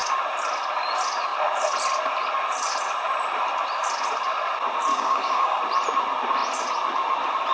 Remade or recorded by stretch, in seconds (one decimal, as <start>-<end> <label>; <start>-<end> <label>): 0.0-4.9 recorded; 4.9-5.6 remade; 5.6-7.5 recorded

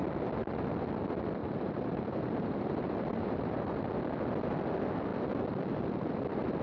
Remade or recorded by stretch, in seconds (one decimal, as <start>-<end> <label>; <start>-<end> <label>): 0.0-1.4 recorded; 1.4-3.9 remade; 3.9-5.1 recorded; 5.1-6.6 remade

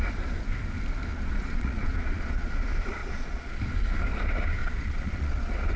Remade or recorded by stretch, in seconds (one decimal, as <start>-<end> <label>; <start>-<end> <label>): 0.0-1.1 recorded; 1.1-2.5 remade; 2.5-3.0 recorded; 3.0-3.6 remade; 3.6-4.6 recorded; 4.6-5.8 remade